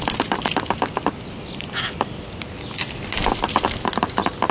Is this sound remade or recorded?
recorded